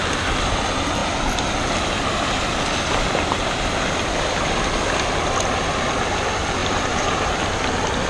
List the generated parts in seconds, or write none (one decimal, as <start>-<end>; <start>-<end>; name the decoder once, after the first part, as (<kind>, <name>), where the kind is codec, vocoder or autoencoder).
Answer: 6.6-7.3 (vocoder, BigVGAN v2)